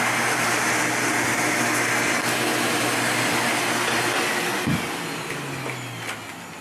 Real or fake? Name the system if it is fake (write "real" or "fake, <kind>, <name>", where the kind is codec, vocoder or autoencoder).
real